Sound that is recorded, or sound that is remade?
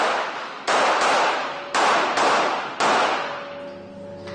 recorded